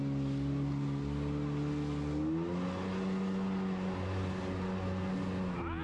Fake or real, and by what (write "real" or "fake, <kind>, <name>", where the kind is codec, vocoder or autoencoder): real